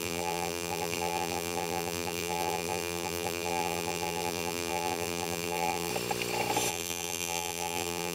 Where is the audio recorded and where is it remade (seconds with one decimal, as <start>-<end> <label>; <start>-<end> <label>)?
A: 0.0-5.9 remade; 5.9-6.7 recorded; 6.7-8.1 remade